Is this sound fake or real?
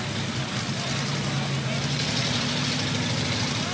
real